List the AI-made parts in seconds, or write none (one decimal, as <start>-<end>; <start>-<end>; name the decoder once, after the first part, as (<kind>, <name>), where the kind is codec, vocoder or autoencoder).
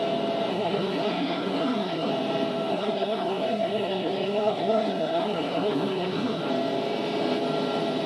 0.5-2.1 (codec, SNAC); 2.7-6.4